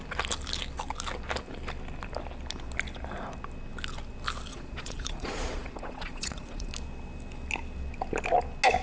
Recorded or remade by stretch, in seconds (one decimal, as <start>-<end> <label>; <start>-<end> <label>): 0.0-4.5 recorded; 4.5-6.7 remade; 6.7-8.8 recorded